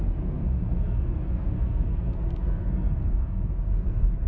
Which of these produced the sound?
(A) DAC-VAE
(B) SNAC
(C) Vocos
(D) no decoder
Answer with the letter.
B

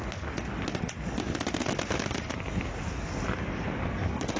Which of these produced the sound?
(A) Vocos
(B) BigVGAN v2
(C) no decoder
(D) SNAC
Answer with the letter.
C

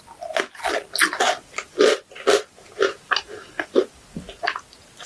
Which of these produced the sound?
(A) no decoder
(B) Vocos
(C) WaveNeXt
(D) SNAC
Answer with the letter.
A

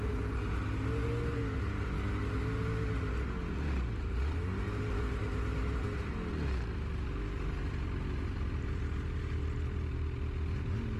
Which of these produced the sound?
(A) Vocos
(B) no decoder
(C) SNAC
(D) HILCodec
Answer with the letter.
B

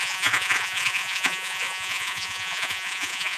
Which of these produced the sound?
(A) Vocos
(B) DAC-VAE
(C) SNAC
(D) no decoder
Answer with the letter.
A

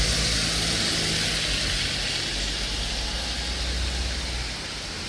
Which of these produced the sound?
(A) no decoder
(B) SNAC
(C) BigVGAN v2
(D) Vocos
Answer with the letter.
A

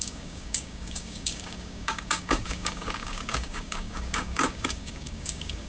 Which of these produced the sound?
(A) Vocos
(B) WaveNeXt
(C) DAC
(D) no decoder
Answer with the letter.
C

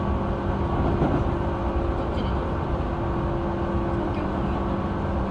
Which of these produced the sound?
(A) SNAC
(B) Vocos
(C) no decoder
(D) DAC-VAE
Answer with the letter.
C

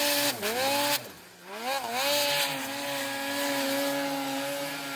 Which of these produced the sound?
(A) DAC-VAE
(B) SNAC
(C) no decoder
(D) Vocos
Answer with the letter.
C